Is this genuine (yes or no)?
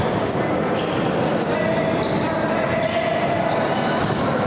yes